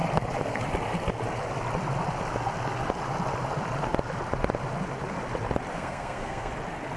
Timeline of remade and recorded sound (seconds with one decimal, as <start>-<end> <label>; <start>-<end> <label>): 0.0-5.7 recorded; 5.7-6.5 remade; 6.5-7.0 recorded